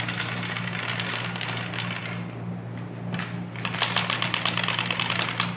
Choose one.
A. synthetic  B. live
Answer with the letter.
B